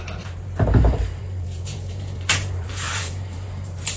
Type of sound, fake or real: fake